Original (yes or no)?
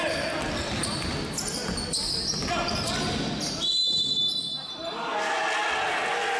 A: yes